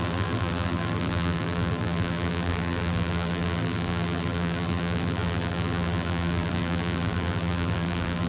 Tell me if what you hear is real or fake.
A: fake